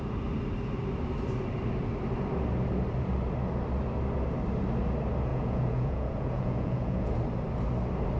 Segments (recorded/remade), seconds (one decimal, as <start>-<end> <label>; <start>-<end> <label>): 0.0-5.3 recorded; 5.3-7.1 remade; 7.1-8.2 recorded